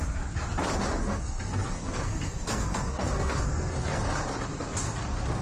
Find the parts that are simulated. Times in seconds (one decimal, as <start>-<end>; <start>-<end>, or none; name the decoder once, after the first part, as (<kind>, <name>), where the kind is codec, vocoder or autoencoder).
1.0-4.2 (codec, SNAC)